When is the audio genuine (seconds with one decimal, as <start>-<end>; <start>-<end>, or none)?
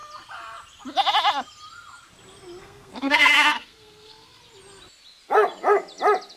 0.0-2.6; 4.4-6.4